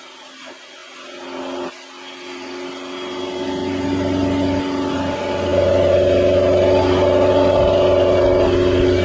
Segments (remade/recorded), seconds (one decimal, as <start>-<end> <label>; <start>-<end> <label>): 0.0-9.0 recorded